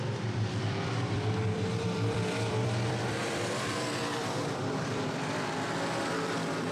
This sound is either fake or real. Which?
fake